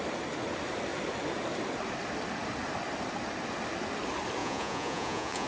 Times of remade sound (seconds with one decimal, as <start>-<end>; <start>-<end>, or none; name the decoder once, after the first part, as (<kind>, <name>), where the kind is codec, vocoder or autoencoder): 4.4-5.5 (vocoder, Vocos)